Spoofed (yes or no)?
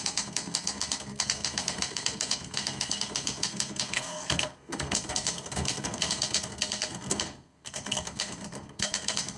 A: yes